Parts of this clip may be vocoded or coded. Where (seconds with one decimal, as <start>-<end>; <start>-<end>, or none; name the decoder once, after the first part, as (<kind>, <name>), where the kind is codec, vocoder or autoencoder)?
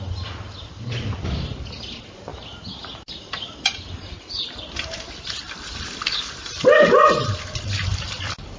0.0-2.3 (vocoder, BigVGAN v2); 4.6-8.6